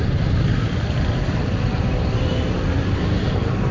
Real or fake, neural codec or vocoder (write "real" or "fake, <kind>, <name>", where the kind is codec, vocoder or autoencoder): real